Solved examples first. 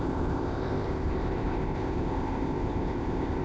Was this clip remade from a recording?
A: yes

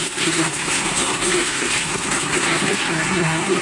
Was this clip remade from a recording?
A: yes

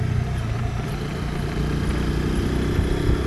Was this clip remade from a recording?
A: no